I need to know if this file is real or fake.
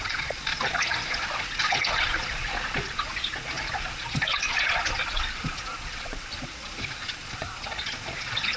fake